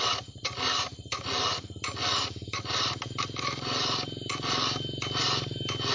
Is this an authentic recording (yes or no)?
yes